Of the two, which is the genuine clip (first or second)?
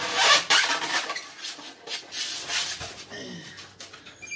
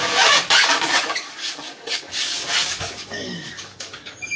first